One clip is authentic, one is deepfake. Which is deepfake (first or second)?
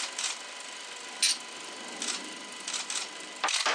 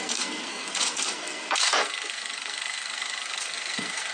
second